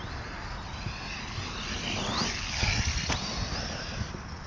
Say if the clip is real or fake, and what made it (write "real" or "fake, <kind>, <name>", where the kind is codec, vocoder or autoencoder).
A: real